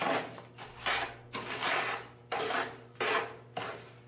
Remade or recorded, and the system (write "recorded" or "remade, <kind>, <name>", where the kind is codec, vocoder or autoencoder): recorded